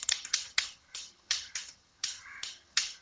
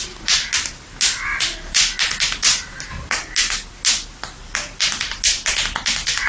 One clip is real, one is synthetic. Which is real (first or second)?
second